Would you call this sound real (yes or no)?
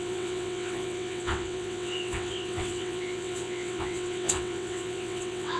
no